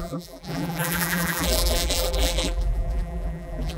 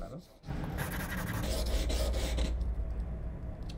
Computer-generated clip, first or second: first